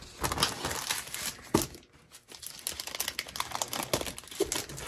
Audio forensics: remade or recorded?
recorded